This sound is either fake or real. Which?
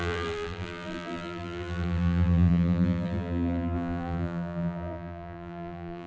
fake